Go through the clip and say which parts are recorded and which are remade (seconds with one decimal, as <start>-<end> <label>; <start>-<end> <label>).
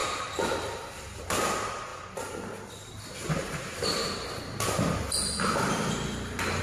0.0-1.2 remade; 1.2-6.6 recorded